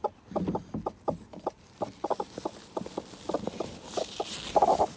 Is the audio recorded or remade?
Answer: recorded